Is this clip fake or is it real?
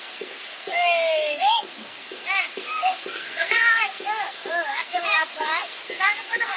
fake